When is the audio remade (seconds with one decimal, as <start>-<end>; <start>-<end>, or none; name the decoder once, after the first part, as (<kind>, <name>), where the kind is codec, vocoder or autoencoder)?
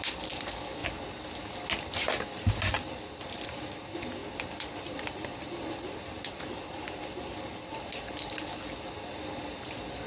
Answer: none